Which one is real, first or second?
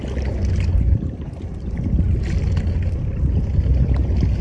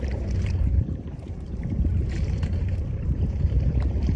first